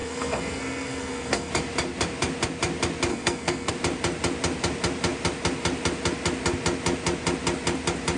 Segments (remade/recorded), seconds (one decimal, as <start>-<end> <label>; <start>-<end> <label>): 0.0-1.5 remade; 1.5-3.1 recorded; 3.1-3.7 remade; 3.7-8.2 recorded